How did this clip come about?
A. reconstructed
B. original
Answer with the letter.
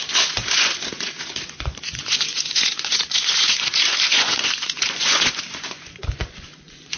A